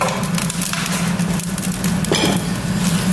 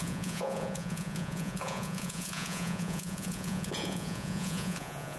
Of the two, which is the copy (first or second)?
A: second